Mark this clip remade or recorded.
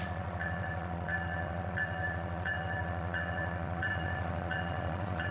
remade